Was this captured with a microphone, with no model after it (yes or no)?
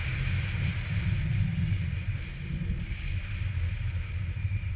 yes